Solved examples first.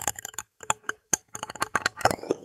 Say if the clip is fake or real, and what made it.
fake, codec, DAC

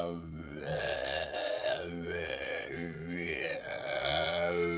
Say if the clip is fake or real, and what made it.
fake, vocoder, Vocos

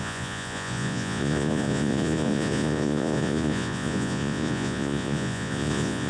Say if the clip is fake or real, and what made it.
fake, vocoder, Vocos